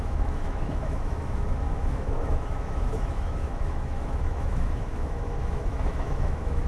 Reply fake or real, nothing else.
fake